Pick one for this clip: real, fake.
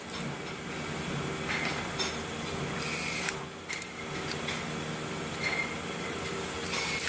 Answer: real